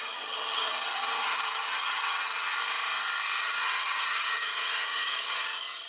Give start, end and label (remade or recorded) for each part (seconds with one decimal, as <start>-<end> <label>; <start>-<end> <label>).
0.0-2.5 remade; 2.5-3.4 recorded; 3.4-5.9 remade